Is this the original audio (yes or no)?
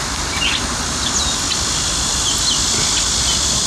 yes